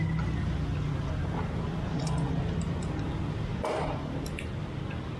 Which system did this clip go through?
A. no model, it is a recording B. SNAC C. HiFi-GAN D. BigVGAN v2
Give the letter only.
A